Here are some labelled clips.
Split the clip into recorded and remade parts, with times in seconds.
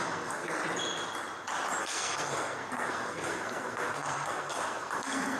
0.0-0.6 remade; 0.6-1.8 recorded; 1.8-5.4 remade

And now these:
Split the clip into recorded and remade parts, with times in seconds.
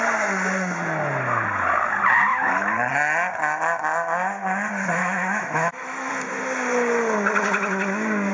0.0-2.3 recorded; 2.3-2.9 remade; 2.9-5.0 recorded; 5.0-6.1 remade; 6.1-8.3 recorded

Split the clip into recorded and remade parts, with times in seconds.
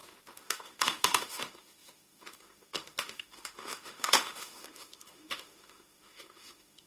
0.0-6.9 remade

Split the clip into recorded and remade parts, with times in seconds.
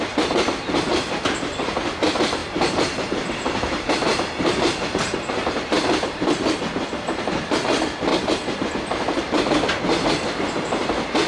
0.0-2.4 recorded; 2.4-6.6 remade; 6.6-8.1 recorded; 8.1-8.7 remade; 8.7-11.3 recorded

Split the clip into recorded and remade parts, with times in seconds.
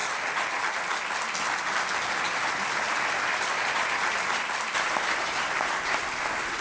0.0-1.8 recorded; 1.8-6.6 remade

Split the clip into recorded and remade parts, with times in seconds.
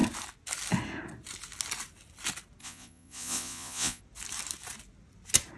0.0-2.6 recorded; 2.6-4.0 remade; 4.0-5.6 recorded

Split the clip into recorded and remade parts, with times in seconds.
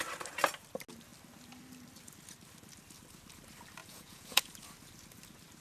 0.0-3.8 recorded; 3.8-4.5 remade; 4.5-5.6 recorded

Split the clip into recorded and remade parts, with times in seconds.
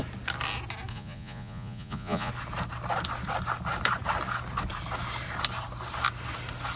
0.0-0.9 recorded; 0.9-2.3 remade; 2.3-6.8 recorded